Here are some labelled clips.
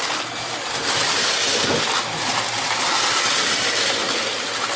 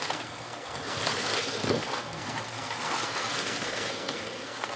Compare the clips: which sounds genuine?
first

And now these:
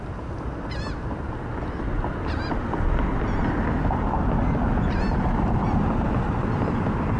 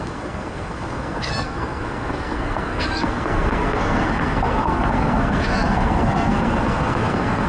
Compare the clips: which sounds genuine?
first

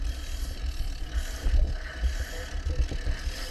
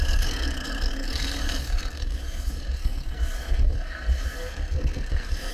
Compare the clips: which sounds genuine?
first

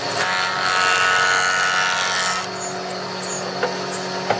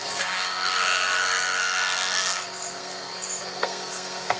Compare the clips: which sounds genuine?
first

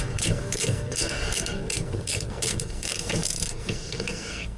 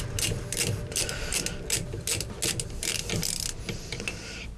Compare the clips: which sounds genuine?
second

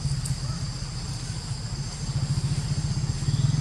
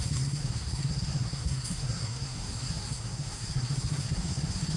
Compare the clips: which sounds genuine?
first